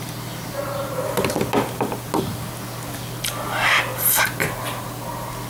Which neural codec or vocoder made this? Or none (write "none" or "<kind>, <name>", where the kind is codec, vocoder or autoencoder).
none